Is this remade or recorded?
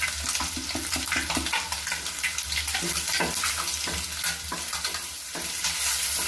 recorded